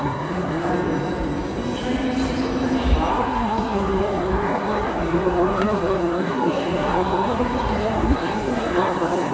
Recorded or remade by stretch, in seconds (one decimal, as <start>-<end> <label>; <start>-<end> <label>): 0.0-0.7 remade; 0.7-3.1 recorded; 3.1-9.3 remade